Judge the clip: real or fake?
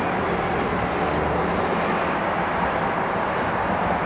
real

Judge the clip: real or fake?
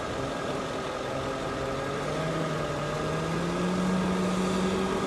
real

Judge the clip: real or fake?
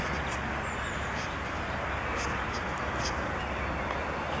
real